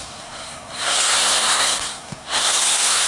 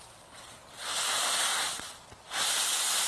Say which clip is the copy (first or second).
first